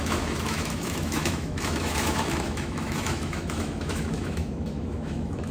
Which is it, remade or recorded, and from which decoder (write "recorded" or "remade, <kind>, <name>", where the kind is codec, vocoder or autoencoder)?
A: remade, autoencoder, DAC-VAE